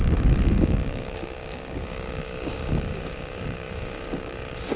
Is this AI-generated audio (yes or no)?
yes